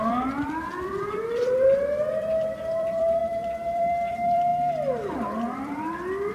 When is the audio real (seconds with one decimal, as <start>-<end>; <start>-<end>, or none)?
4.5-5.1